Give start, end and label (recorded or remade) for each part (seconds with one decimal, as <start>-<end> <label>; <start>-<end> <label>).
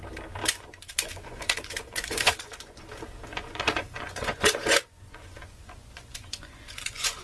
0.0-0.4 recorded; 0.4-2.8 remade; 2.8-3.3 recorded; 3.3-7.2 remade